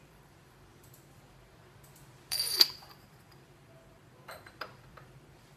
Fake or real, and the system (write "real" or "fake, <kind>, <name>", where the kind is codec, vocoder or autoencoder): fake, vocoder, BigVGAN v2